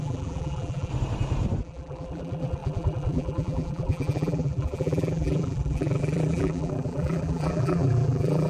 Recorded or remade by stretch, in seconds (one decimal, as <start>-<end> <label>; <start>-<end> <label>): 0.0-0.9 remade; 0.9-1.6 recorded; 1.6-8.5 remade